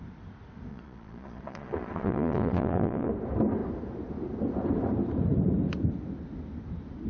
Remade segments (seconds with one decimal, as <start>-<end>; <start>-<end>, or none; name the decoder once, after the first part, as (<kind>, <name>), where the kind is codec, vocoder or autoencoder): 0.7-3.1 (vocoder, Vocos)